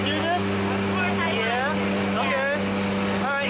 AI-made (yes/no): no